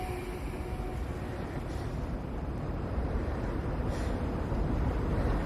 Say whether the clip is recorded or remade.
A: recorded